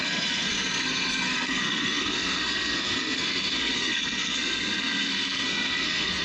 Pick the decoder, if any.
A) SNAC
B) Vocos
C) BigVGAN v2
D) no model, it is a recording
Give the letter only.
A